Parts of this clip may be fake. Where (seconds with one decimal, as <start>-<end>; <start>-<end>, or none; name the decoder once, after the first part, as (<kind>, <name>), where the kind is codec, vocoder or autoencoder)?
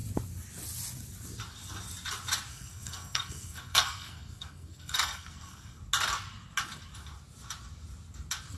2.5-5.8 (codec, SNAC)